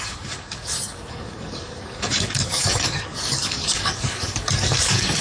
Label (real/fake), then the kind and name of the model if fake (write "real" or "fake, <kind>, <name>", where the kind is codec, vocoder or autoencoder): fake, codec, DAC